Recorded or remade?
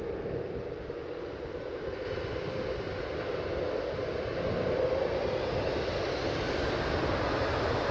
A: recorded